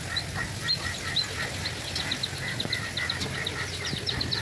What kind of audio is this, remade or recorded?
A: recorded